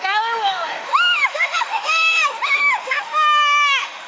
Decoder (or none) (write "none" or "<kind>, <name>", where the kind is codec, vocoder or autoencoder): autoencoder, DAC-VAE